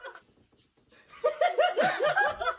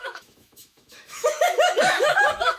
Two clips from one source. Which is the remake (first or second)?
second